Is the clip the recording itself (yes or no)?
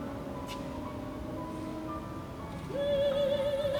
yes